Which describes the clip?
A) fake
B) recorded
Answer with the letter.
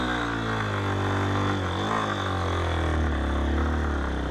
B